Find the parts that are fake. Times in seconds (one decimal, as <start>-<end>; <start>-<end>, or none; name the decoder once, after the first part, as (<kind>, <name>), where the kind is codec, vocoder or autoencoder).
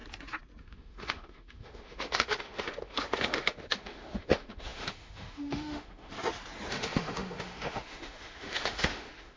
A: 0.6-6.1 (autoencoder, DAC-VAE); 6.7-9.4